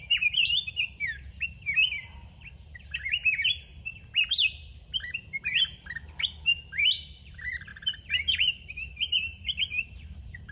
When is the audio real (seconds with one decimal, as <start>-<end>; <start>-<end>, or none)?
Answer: 3.7-5.4

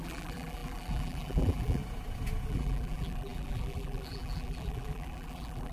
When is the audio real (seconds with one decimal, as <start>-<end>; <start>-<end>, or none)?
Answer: 1.8-2.5

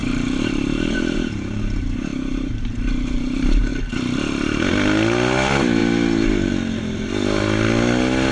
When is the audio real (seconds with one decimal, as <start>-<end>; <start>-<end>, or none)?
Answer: 1.6-8.3

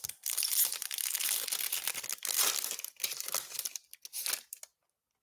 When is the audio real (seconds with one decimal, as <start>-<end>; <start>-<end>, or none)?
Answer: 0.0-5.2

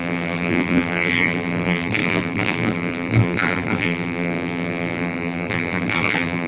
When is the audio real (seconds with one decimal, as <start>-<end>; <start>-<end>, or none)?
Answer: none

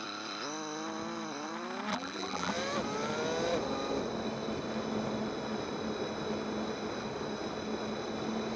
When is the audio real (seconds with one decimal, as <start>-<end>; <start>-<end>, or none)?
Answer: 0.0-1.9; 2.5-8.6

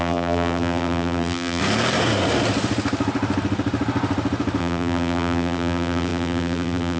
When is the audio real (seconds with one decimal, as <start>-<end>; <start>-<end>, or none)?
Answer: 1.6-4.6